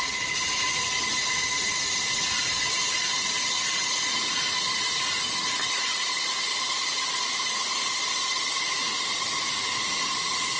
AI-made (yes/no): yes